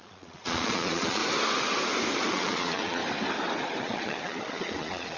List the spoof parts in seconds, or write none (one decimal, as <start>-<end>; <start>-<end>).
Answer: 0.0-1.2; 2.3-3.0; 3.8-5.2